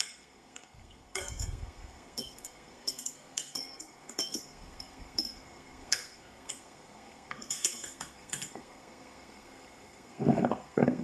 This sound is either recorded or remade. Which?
remade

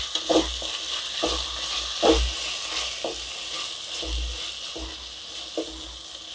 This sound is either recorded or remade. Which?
recorded